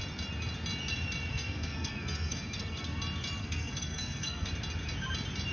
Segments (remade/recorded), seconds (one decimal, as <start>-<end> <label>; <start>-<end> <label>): 0.0-1.3 recorded; 1.3-3.0 remade; 3.0-3.4 recorded; 3.4-4.5 remade; 4.5-5.5 recorded